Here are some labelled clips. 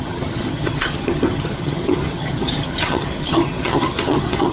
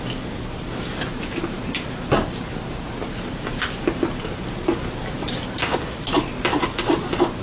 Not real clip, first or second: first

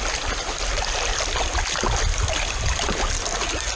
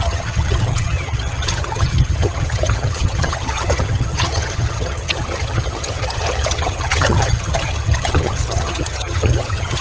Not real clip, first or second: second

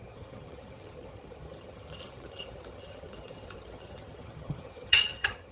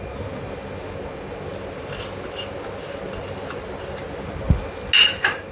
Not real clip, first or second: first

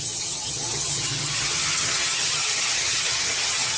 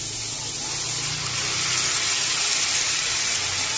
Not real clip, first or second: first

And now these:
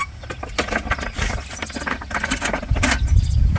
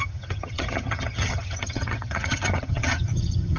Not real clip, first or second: second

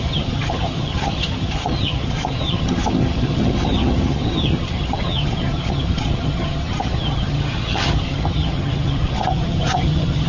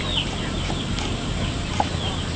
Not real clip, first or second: first